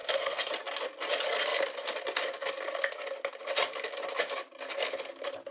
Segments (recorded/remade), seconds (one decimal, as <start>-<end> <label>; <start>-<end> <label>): 0.0-0.5 remade; 0.5-5.5 recorded